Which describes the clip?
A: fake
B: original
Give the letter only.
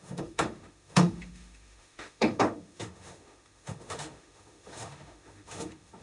A